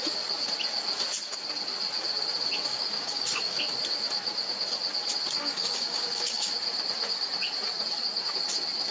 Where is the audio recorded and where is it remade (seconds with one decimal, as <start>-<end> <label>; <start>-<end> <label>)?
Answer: 0.0-2.7 recorded; 2.7-3.6 remade; 3.6-5.4 recorded; 5.4-6.5 remade; 6.5-8.9 recorded